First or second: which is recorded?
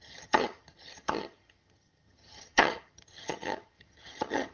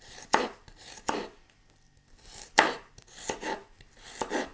second